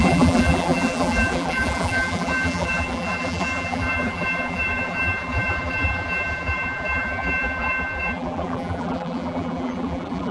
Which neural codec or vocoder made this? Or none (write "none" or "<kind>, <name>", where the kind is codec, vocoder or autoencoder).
vocoder, BigVGAN v2